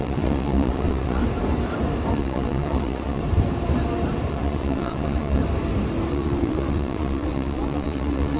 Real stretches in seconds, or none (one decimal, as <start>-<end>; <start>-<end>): 1.2-2.1; 3.2-4.3; 5.4-6.1